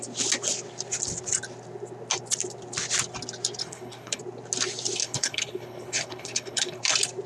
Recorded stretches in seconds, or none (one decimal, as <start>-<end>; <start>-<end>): 0.0-3.6; 4.2-5.0; 6.8-7.3